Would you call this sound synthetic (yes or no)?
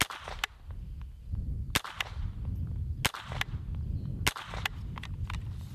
no